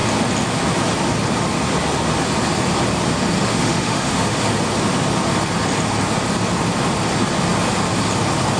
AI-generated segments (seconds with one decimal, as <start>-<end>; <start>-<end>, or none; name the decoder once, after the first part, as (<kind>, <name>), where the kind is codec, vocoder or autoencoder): 3.5-4.4 (autoencoder, DAC-VAE)